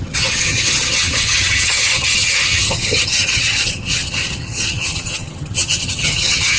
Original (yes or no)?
no